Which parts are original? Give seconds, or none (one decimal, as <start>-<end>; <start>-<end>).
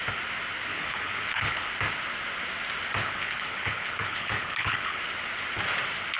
0.0-0.7; 1.7-3.0; 5.0-6.2